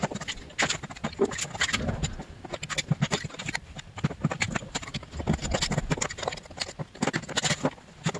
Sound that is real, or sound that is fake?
real